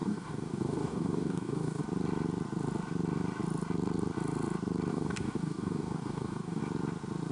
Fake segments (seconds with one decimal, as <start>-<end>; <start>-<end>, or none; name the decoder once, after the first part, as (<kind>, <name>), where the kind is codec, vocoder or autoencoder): 0.0-1.8 (codec, DAC); 4.9-6.6